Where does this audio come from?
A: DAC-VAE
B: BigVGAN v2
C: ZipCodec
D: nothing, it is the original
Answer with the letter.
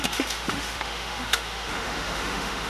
A